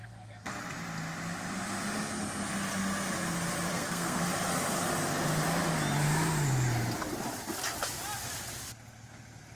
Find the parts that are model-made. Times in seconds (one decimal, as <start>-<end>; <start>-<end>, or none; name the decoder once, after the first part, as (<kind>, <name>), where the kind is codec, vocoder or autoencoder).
0.0-0.5 (codec, SNAC); 3.7-4.2